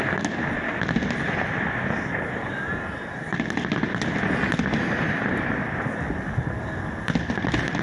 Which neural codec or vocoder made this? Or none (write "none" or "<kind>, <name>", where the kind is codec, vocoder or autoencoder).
none